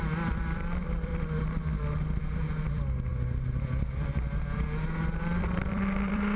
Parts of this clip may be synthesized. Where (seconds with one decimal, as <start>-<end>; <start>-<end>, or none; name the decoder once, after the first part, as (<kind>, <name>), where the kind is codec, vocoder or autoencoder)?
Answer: 0.0-1.1 (vocoder, BigVGAN v2); 2.7-3.1; 5.2-6.4